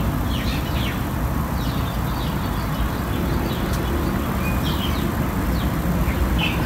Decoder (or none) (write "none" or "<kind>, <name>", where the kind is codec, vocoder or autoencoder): none